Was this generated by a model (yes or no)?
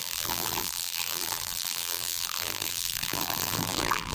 yes